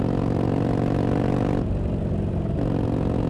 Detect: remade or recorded recorded